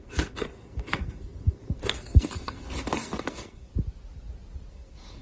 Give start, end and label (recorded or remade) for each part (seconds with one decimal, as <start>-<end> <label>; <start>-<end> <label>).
0.0-3.7 remade; 3.7-4.7 recorded; 4.7-5.2 remade

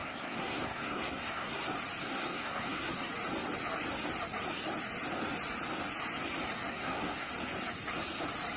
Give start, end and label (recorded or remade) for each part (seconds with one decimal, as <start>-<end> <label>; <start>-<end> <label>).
0.0-1.6 remade; 1.6-2.0 recorded; 2.0-3.1 remade; 3.1-6.7 recorded; 6.7-7.3 remade; 7.3-8.6 recorded